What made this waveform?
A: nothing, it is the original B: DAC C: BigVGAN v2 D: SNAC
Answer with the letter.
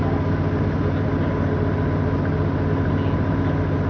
A